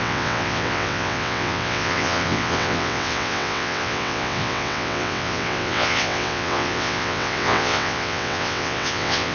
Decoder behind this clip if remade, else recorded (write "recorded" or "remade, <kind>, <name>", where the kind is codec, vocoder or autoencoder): remade, vocoder, WaveNeXt